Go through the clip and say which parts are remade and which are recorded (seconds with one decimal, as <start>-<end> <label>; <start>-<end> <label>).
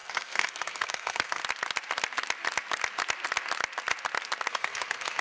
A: 0.0-1.4 remade; 1.4-4.5 recorded; 4.5-5.2 remade